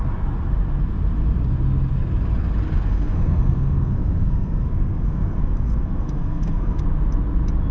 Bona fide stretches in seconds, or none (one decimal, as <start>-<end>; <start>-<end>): 0.0-2.9; 6.8-7.7